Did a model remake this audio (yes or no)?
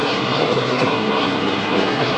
yes